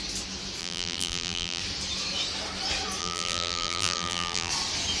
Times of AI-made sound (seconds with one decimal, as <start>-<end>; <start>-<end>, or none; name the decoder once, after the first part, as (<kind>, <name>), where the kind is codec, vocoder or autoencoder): 0.6-1.6 (vocoder, BigVGAN v2); 3.0-4.5